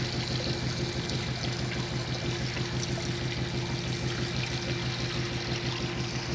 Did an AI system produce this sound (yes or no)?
no